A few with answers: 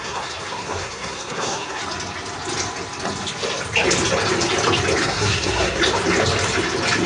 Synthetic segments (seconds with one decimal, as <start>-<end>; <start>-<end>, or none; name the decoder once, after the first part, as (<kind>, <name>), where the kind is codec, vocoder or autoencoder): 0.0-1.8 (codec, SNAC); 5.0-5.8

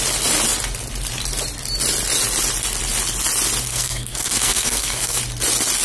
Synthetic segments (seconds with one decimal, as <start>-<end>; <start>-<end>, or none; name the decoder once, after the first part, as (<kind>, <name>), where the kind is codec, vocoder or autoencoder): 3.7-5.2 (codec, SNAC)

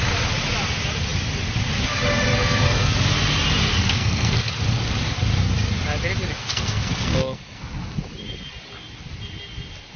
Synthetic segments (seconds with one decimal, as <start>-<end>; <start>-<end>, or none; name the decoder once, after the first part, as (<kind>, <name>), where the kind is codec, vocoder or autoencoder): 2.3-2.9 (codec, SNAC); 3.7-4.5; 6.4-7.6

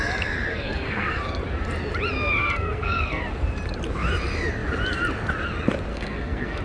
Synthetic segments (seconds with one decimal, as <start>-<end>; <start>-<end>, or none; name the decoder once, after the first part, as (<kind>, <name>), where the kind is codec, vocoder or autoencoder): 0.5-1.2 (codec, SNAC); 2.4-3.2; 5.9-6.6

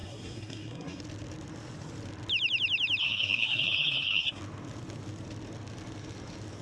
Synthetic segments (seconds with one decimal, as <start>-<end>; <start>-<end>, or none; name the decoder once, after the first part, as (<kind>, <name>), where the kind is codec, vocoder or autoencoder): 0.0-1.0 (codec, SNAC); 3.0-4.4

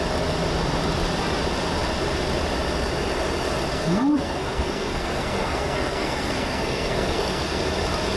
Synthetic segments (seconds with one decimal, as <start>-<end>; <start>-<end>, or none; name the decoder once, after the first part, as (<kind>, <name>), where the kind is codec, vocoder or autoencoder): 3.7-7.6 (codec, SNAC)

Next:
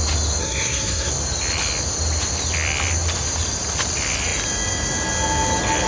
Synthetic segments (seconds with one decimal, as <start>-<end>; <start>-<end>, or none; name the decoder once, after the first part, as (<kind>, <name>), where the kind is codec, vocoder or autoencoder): 0.4-1.1 (codec, SNAC)

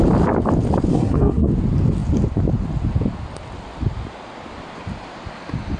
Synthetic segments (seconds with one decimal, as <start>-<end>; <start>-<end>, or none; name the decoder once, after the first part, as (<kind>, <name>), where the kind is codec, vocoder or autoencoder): 0.9-1.5 (codec, SNAC)